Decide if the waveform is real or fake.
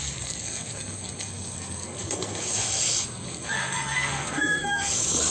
fake